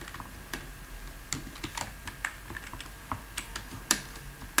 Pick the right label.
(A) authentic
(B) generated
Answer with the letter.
A